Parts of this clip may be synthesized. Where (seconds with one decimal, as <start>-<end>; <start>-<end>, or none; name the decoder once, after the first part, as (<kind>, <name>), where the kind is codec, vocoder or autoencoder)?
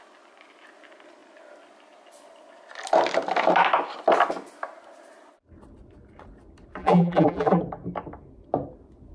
6.8-7.6 (vocoder, BigVGAN v2)